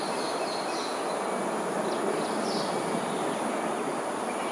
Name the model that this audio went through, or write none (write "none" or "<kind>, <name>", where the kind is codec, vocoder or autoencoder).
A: none